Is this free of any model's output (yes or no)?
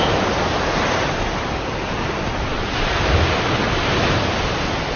yes